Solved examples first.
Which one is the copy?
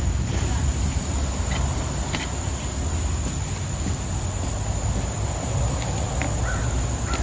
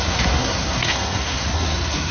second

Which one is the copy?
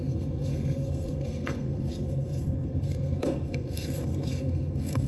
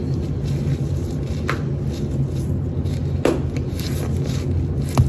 first